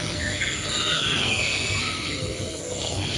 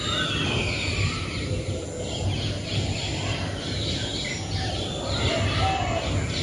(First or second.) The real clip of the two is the second